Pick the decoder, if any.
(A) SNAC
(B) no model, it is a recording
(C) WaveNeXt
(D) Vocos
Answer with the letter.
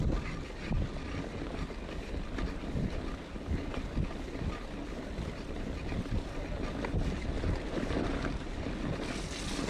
B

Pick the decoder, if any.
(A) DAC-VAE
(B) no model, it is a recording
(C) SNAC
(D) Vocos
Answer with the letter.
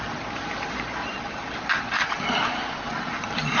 B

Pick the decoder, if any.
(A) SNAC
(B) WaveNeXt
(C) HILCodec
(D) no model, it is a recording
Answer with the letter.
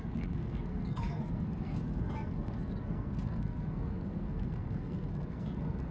A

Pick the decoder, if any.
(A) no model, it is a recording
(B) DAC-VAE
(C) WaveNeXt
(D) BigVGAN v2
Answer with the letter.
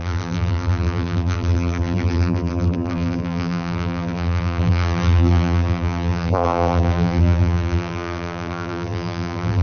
D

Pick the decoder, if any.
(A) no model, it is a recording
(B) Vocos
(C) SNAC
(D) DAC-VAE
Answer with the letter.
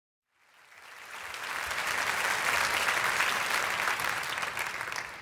A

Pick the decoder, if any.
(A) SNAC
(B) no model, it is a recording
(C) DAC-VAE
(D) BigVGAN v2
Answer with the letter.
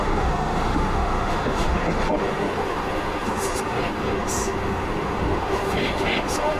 C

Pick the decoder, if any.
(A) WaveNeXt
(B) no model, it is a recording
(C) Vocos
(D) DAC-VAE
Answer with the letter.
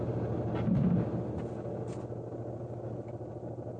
B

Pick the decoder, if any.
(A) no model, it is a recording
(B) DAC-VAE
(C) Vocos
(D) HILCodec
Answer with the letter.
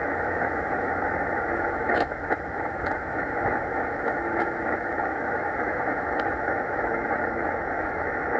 B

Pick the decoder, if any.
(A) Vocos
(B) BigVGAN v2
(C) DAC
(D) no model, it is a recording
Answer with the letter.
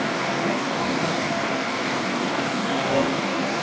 C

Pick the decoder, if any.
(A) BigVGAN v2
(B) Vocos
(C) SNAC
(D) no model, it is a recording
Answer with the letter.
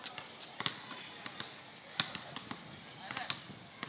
D